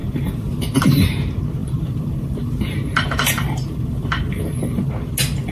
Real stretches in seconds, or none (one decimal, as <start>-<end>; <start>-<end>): 0.8-1.6; 4.9-5.5